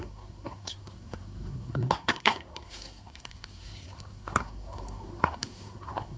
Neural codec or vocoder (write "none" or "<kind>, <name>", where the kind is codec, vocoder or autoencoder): codec, SNAC